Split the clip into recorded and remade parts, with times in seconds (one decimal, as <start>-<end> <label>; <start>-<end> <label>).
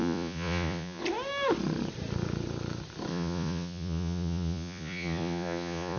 0.0-1.0 remade; 1.0-3.1 recorded; 3.1-6.0 remade